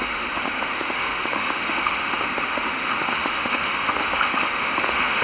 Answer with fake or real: fake